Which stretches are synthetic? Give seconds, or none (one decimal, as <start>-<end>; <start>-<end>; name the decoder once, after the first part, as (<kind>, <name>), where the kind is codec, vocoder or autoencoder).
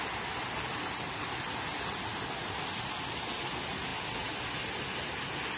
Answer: none